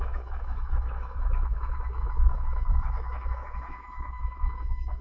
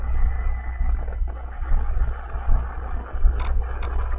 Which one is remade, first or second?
first